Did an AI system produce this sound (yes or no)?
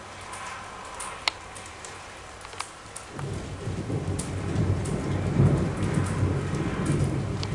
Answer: no